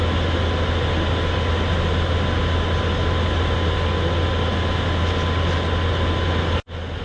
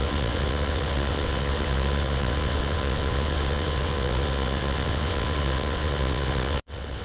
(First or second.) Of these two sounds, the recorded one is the first